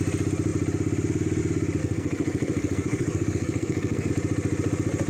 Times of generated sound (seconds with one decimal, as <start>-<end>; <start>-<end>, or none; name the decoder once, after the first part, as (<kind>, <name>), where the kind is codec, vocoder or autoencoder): 1.8-4.1 (codec, SNAC)